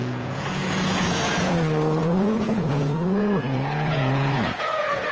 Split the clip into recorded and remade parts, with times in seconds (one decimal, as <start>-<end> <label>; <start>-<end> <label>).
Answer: 0.0-1.5 remade; 1.5-2.0 recorded; 2.0-5.1 remade